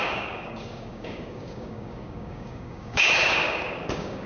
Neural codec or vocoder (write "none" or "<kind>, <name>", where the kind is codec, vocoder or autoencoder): codec, DAC